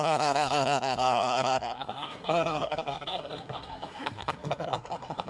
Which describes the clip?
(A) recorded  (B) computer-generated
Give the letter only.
B